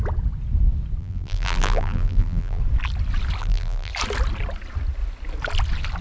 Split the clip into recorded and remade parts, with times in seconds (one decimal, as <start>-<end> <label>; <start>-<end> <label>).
0.0-1.0 recorded; 1.0-2.6 remade; 2.6-3.4 recorded; 3.4-3.9 remade; 3.9-6.0 recorded